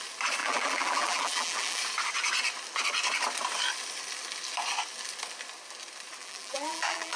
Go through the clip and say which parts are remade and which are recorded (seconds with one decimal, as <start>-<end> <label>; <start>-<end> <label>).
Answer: 0.0-0.4 recorded; 0.4-1.8 remade; 1.8-6.2 recorded; 6.2-7.2 remade